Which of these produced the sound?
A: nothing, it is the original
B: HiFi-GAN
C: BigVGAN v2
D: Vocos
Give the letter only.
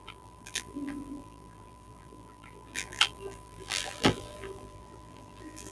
C